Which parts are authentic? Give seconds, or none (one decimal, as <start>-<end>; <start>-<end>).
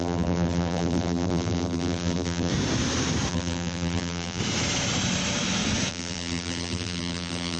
2.5-3.3; 4.4-5.9